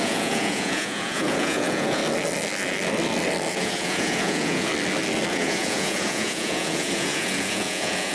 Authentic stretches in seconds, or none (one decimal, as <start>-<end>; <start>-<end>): 2.0-3.5; 4.7-5.3